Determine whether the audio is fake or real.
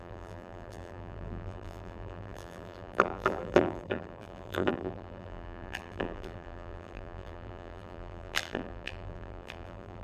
fake